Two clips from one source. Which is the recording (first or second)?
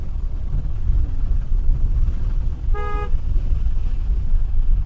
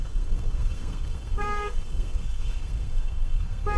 first